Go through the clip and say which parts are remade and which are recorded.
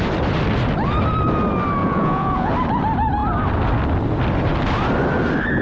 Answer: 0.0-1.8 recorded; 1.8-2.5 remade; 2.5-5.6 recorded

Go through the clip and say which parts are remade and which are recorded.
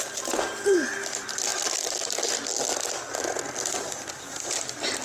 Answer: 0.0-1.5 remade; 1.5-4.5 recorded; 4.5-5.0 remade